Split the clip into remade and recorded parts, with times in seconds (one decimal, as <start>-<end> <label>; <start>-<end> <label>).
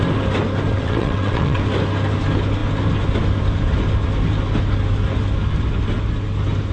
0.0-0.7 recorded; 0.7-1.6 remade; 1.6-6.7 recorded